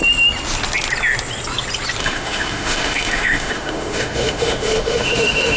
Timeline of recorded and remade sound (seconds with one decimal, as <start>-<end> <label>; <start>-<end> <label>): 0.0-2.0 recorded; 2.0-5.6 remade